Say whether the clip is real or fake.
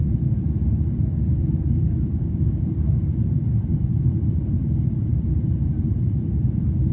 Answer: fake